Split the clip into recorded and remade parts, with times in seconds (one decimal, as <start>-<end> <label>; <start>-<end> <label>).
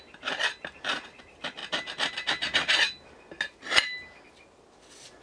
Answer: 0.0-5.2 recorded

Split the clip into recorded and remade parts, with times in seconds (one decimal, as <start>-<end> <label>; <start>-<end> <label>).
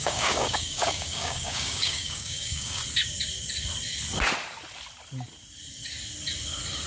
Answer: 0.0-2.8 remade; 2.8-6.9 recorded